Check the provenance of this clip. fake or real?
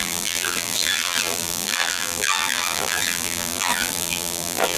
fake